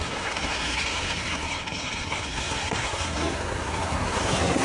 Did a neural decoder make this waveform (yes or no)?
yes